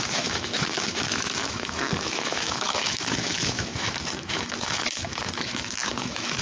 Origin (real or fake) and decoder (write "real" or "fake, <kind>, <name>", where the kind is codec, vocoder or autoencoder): fake, autoencoder, DAC-VAE